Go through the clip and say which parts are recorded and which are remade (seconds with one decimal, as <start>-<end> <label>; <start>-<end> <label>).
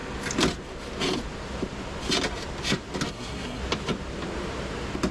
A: 0.0-3.1 recorded; 3.1-3.6 remade; 3.6-5.1 recorded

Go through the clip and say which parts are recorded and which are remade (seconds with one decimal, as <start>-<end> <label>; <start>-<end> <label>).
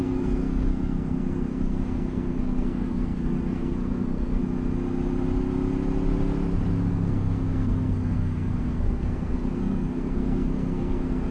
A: 0.0-4.4 remade; 4.4-6.9 recorded; 6.9-11.3 remade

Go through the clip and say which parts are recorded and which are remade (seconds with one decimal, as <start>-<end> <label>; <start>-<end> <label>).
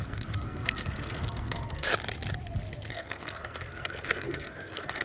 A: 0.0-1.9 remade; 1.9-2.9 recorded; 2.9-5.0 remade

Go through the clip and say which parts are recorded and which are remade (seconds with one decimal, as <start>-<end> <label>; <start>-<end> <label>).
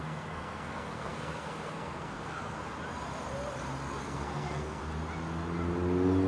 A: 0.0-2.6 remade; 2.6-4.0 recorded; 4.0-4.8 remade; 4.8-6.3 recorded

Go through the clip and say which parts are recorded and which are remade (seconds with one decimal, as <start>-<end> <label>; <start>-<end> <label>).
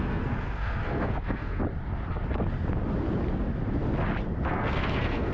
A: 0.0-1.6 remade; 1.6-4.5 recorded; 4.5-5.3 remade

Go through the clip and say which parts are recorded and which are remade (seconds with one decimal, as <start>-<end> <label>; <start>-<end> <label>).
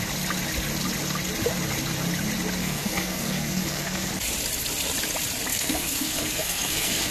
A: 0.0-2.6 recorded; 2.6-4.1 remade; 4.1-5.5 recorded; 5.5-7.1 remade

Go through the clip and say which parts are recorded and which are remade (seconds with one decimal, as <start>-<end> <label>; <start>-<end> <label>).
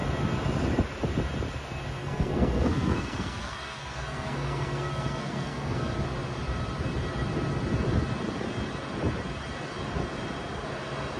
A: 0.0-2.0 recorded; 2.0-5.9 remade; 5.9-11.2 recorded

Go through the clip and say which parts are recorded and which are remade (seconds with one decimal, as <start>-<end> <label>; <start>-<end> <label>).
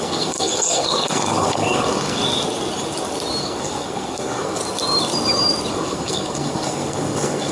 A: 0.0-2.2 remade; 2.2-3.4 recorded; 3.4-4.6 remade; 4.6-5.7 recorded; 5.7-7.5 remade